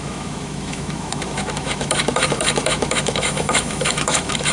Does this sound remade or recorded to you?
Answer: remade